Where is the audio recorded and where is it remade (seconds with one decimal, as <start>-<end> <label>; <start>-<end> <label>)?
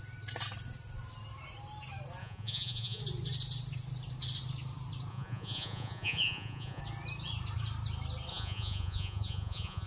0.0-2.2 recorded; 2.2-3.0 remade; 3.0-5.1 recorded; 5.1-6.8 remade; 6.8-8.3 recorded; 8.3-9.9 remade